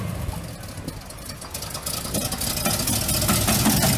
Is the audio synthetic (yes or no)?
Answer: no